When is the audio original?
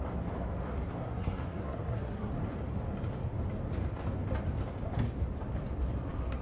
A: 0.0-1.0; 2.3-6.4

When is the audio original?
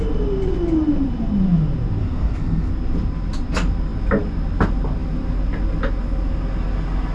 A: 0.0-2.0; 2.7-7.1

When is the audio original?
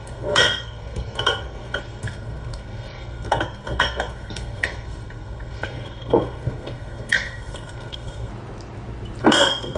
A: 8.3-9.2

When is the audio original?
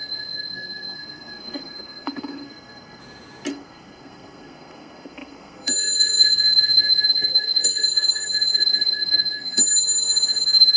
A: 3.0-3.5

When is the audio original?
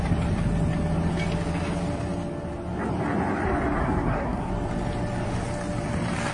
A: 0.0-3.8; 4.5-6.3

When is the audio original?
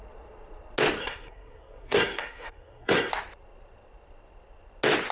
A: 0.0-1.0; 3.1-5.1